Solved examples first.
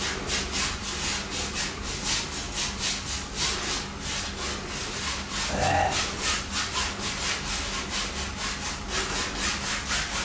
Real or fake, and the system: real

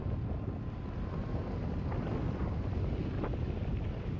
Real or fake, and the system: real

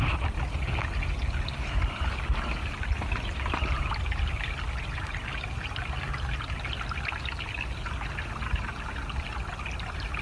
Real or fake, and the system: real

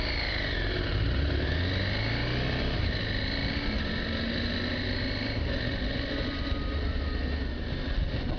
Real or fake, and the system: real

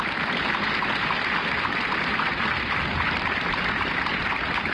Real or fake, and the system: real